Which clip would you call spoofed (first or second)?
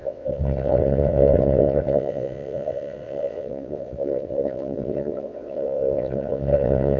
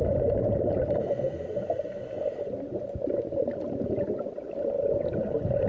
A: first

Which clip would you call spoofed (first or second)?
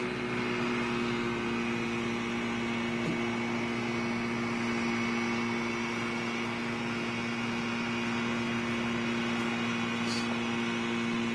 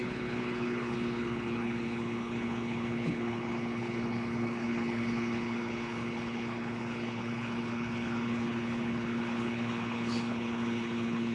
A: second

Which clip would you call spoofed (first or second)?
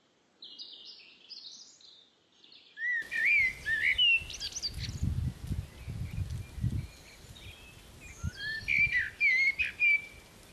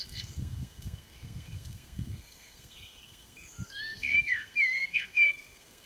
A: second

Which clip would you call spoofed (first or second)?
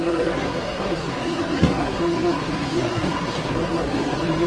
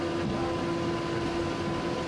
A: first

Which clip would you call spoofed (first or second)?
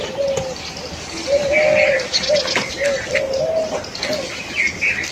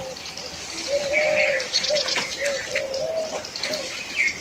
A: second